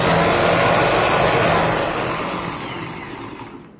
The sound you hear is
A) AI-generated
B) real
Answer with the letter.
B